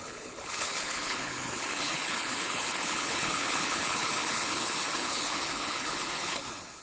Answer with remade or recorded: remade